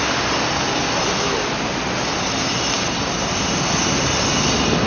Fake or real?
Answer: real